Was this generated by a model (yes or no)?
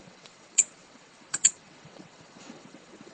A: yes